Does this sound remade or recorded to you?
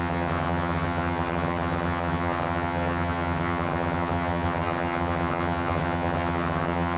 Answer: remade